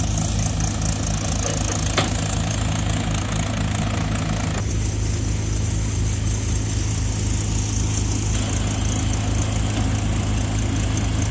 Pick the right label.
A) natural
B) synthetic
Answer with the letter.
A